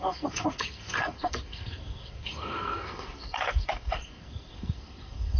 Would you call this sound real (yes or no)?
no